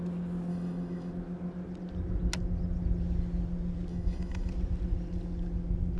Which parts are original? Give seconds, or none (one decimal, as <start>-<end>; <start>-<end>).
0.0-0.5; 1.1-3.9; 4.5-6.0